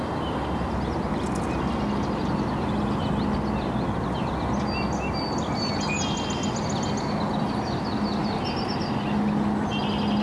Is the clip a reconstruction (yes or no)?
no